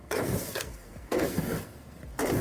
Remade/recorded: remade